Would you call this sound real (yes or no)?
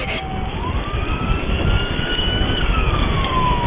no